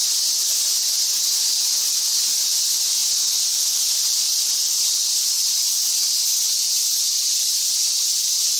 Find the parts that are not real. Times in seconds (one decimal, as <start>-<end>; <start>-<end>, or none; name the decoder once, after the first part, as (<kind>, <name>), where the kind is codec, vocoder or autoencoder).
none